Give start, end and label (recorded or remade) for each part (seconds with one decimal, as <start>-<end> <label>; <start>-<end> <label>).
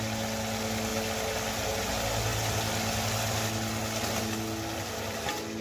0.0-5.6 recorded